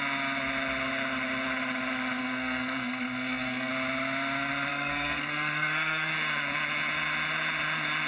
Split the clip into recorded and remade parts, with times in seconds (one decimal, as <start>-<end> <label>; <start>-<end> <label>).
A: 0.0-2.2 recorded; 2.2-3.7 remade; 3.7-4.7 recorded; 4.7-6.1 remade; 6.1-8.1 recorded